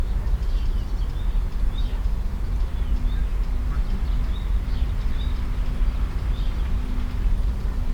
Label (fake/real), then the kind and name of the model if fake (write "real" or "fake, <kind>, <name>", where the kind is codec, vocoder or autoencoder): real